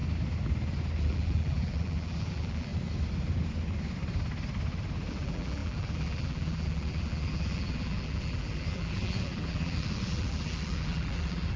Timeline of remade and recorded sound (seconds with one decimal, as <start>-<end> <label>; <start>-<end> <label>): 0.0-1.0 recorded; 1.0-2.7 remade; 2.7-5.1 recorded; 5.1-11.6 remade